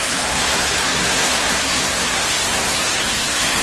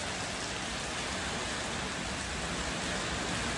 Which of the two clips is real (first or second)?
second